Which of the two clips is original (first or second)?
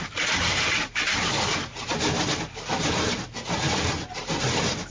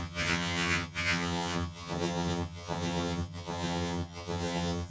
first